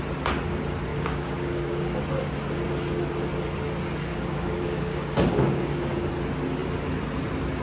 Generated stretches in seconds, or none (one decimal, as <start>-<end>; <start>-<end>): 0.9-2.0; 4.1-6.1